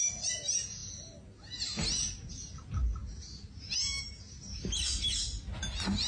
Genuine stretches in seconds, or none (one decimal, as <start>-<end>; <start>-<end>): 0.0-6.1